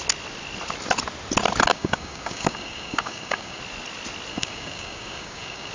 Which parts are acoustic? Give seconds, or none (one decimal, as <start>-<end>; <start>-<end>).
0.0-1.7; 3.6-4.3